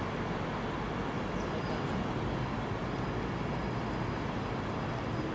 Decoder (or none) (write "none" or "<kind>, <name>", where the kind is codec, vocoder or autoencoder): none